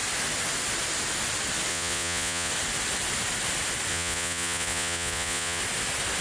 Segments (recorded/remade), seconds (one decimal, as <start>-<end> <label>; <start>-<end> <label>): 0.0-1.7 recorded; 1.7-2.5 remade; 2.5-3.9 recorded; 3.9-5.6 remade; 5.6-6.2 recorded